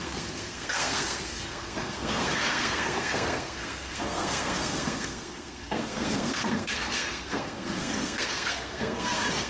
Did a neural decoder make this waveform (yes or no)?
yes